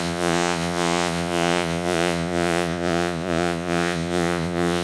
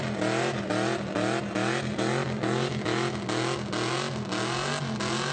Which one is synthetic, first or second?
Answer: first